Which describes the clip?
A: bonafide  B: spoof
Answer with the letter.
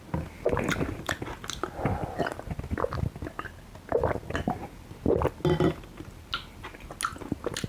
A